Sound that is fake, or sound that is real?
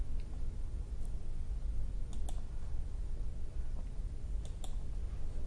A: real